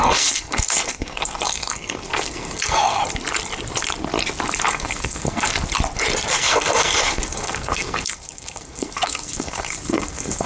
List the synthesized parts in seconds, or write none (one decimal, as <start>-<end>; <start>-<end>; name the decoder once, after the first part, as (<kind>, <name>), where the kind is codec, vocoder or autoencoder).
0.0-3.0 (codec, SNAC); 4.7-5.5; 6.3-10.5